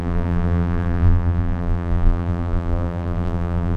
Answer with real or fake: fake